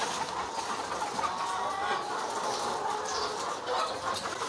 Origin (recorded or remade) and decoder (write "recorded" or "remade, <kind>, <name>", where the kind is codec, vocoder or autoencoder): recorded